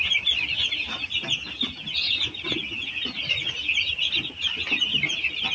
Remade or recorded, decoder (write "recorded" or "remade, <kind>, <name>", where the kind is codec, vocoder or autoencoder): recorded